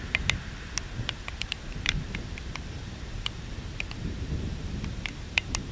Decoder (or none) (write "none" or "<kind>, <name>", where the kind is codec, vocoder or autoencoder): vocoder, BigVGAN v2